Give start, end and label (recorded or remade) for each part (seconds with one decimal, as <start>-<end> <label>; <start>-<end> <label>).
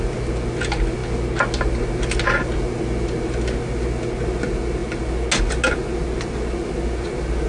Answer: 0.0-7.5 recorded